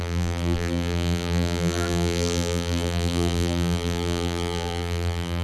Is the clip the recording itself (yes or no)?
no